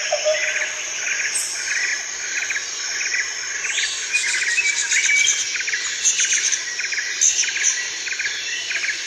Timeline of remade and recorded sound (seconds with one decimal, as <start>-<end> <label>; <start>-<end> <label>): 0.0-9.1 recorded